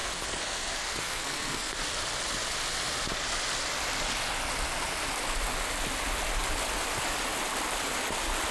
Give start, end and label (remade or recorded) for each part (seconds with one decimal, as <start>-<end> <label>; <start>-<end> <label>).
0.0-1.7 remade; 1.7-8.5 recorded